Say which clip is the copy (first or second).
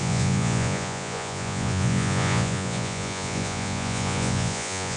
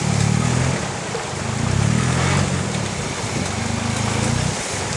first